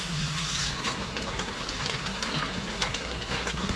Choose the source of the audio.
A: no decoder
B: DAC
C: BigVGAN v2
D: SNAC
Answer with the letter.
D